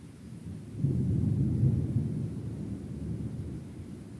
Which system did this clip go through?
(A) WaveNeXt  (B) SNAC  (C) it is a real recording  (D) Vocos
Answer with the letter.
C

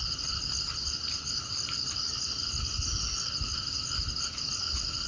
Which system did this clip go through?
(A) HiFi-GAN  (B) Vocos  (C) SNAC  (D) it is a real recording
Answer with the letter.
D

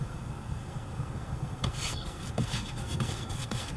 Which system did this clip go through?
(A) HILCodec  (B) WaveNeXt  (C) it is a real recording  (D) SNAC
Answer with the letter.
D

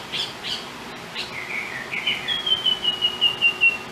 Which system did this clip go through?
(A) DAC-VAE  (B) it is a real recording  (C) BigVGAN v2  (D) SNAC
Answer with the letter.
B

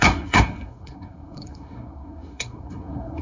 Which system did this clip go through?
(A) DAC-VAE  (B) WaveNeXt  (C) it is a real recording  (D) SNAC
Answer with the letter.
D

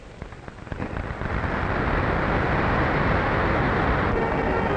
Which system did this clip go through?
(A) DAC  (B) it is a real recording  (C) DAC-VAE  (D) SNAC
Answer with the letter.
B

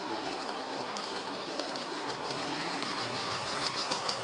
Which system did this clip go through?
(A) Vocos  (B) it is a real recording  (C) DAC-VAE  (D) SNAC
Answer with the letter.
D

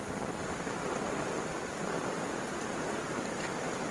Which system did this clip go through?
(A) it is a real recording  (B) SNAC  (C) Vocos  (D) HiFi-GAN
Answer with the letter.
A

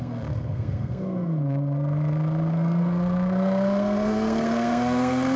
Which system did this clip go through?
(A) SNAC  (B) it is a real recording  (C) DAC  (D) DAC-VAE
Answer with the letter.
A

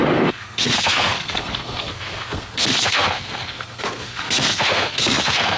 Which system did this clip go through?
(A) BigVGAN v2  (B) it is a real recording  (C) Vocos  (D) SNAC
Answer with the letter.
D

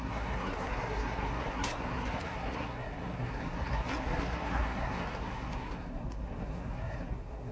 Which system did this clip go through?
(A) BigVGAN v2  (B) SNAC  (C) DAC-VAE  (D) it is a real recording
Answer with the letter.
B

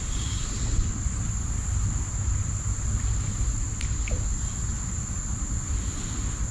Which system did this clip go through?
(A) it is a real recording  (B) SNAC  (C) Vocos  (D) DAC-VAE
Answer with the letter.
A